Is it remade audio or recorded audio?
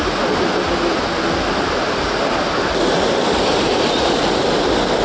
recorded